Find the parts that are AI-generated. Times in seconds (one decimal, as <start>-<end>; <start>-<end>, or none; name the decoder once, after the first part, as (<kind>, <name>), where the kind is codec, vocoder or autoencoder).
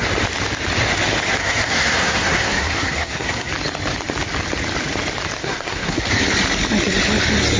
1.4-3.5 (codec, SNAC); 5.4-6.1